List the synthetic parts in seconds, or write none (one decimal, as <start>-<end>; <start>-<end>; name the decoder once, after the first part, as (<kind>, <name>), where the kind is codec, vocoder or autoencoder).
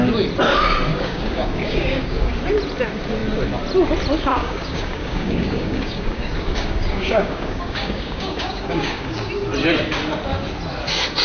0.9-2.3 (codec, DAC); 4.3-9.3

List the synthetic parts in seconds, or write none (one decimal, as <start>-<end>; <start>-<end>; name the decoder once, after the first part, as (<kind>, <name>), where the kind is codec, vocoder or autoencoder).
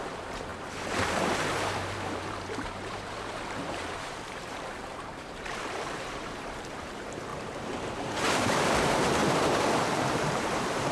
0.0-9.2 (vocoder, BigVGAN v2); 9.9-10.9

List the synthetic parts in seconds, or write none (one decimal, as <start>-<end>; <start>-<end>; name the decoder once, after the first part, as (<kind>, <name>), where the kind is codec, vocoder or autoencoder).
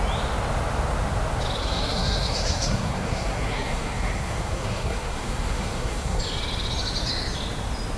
1.6-6.2 (codec, SNAC)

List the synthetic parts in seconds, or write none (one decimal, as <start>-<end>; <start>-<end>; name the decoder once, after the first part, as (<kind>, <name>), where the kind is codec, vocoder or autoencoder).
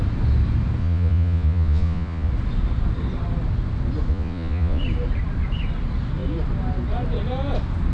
0.8-2.3 (vocoder, Vocos); 4.1-4.8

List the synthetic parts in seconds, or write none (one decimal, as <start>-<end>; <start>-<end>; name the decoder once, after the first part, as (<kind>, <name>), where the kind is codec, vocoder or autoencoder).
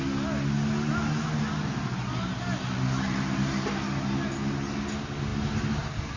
none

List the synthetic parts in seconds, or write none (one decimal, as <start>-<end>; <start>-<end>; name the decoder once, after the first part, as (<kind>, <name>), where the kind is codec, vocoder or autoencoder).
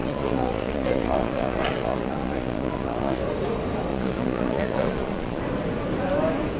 0.0-3.2 (vocoder, Vocos); 3.9-5.4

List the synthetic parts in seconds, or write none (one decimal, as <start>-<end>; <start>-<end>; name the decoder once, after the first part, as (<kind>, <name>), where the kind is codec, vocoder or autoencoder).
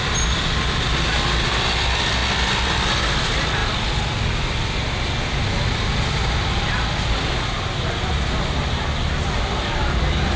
none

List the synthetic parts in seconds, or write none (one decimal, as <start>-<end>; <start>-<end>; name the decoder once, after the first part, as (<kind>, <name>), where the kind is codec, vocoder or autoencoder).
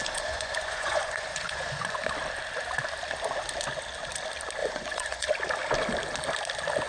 0.0-2.0 (vocoder, Vocos); 4.6-5.3